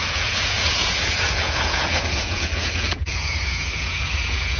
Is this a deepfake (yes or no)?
yes